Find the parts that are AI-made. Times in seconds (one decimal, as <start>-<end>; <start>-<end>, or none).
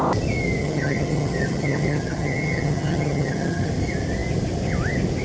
0.6-3.7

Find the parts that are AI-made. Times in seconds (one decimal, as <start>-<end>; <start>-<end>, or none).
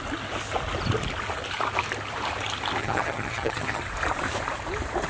2.8-3.8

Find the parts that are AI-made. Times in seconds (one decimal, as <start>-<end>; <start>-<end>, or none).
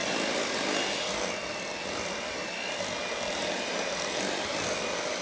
none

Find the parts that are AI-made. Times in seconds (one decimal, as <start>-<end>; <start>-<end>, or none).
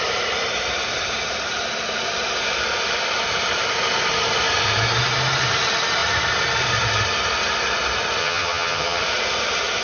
8.2-9.0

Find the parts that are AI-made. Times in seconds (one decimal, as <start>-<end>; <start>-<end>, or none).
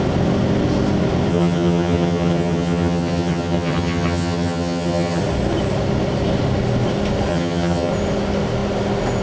1.3-5.2; 7.3-7.9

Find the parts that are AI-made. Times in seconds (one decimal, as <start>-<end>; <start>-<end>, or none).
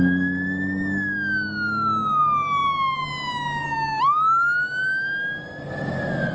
none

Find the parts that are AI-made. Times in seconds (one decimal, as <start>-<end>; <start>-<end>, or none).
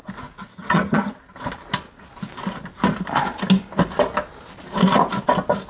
0.5-1.1